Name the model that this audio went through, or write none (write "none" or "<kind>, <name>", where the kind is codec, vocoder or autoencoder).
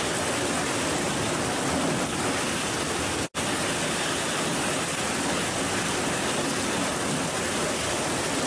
none